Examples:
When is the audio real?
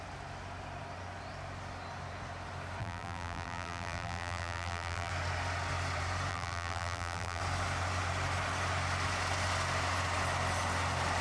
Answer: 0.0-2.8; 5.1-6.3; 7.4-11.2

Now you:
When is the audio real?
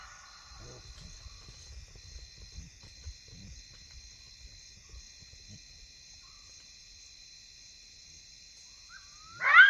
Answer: 0.0-9.7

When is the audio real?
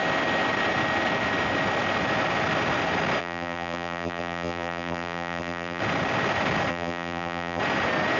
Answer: 0.0-3.2; 5.8-6.7; 7.6-8.2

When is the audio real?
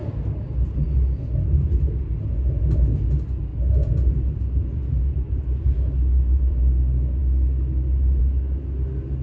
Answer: 0.0-3.5; 6.7-9.2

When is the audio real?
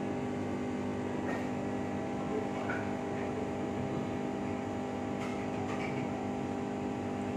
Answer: 0.9-2.7; 5.3-6.0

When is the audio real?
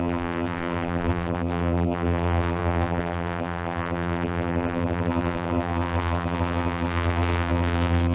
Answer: none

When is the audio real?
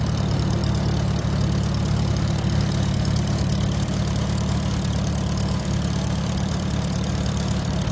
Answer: 0.6-2.1